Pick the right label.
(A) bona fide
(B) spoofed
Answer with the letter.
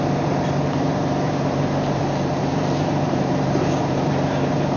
B